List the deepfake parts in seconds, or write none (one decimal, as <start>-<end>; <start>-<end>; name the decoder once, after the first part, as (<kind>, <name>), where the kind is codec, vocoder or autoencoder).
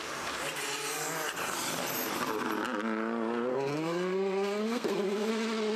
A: 3.5-5.3 (codec, SNAC)